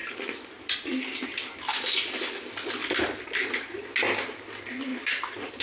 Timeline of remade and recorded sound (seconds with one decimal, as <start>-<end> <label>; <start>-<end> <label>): 0.0-4.9 recorded; 4.9-5.6 remade